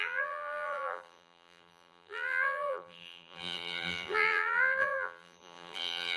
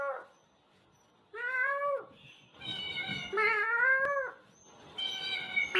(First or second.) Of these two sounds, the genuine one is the second